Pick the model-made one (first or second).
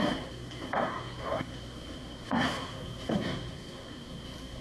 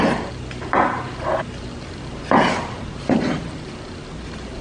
first